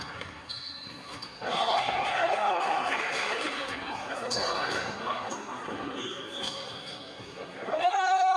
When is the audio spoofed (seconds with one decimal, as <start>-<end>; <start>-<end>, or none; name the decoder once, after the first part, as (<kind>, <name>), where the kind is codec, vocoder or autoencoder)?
0.0-8.4 (codec, SNAC)